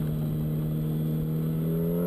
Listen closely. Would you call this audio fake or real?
real